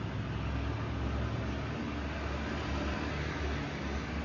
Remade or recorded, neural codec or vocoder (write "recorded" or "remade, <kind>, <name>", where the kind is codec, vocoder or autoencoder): recorded